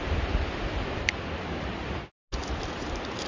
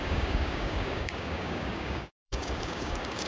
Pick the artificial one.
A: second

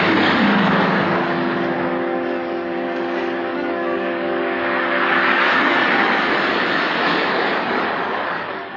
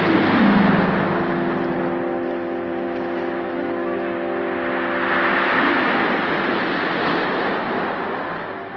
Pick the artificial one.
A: first